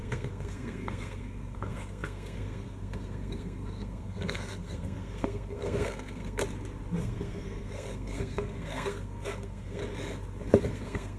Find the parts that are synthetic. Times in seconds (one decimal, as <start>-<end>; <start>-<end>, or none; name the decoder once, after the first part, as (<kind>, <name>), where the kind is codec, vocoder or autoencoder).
0.0-6.4 (codec, SNAC); 7.0-9.8; 10.6-11.2

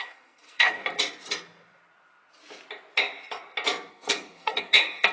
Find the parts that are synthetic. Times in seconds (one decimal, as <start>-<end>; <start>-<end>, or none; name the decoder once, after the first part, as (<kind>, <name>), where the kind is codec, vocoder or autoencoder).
0.0-0.8 (codec, SNAC); 3.9-5.1

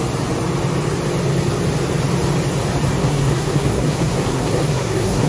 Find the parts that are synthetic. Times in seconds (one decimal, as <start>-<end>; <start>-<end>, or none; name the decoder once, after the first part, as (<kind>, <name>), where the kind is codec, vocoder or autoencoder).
3.0-5.3 (codec, SNAC)

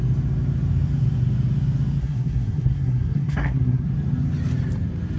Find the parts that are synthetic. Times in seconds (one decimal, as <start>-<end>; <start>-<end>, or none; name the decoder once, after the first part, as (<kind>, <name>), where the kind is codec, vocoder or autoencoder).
2.0-3.9 (codec, SNAC)